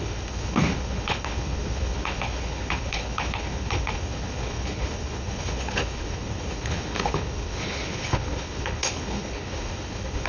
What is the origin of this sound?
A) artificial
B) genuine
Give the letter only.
A